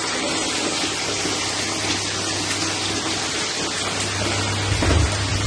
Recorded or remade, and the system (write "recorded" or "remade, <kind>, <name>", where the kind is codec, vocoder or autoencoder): recorded